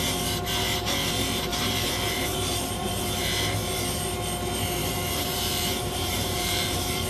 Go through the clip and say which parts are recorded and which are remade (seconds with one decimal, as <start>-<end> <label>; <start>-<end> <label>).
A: 0.0-1.5 recorded; 1.5-2.9 remade; 2.9-4.8 recorded; 4.8-7.1 remade